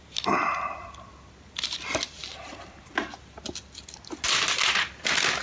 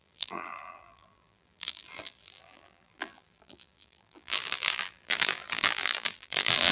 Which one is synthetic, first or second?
second